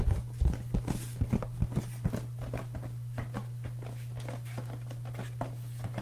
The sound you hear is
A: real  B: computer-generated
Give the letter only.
A